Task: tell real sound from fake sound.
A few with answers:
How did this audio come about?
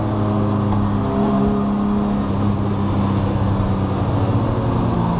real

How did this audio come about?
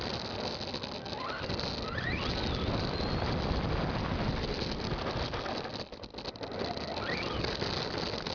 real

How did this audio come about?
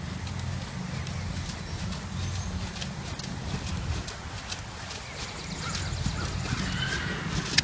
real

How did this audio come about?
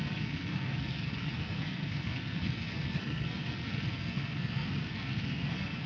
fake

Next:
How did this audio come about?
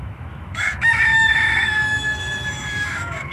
fake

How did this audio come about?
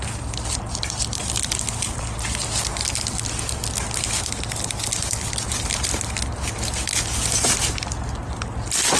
real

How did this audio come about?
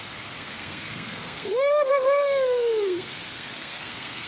fake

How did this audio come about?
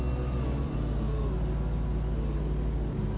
real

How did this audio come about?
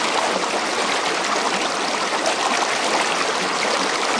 real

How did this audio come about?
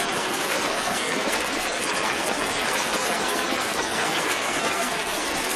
fake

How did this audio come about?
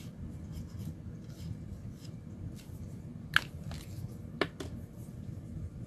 real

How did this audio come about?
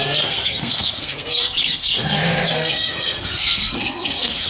fake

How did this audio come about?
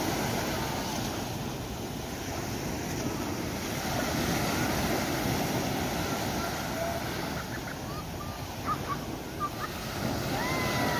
real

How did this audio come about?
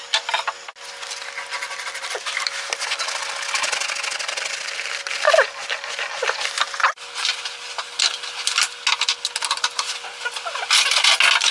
real